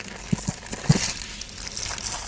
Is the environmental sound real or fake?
real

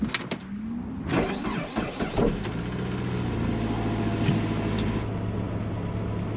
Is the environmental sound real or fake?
real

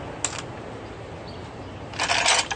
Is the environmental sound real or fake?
real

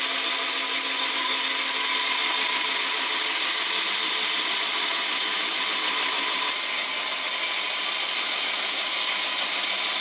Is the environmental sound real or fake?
real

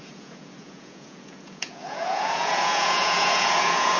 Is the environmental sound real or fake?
fake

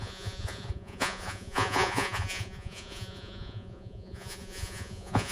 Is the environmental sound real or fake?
fake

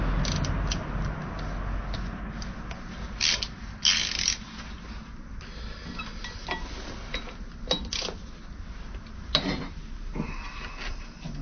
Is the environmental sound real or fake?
real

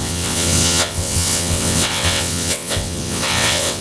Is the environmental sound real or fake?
fake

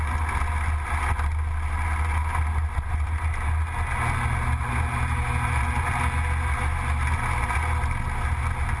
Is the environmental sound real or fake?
real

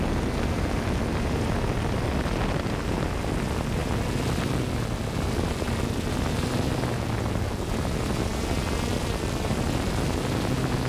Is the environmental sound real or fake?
real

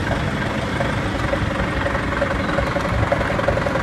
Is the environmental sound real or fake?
real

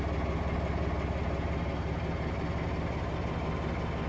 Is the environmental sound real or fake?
real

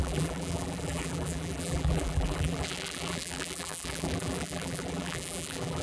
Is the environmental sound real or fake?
fake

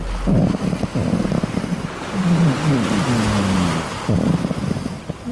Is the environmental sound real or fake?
real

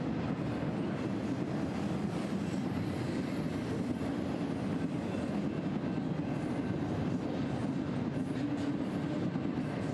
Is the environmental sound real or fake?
real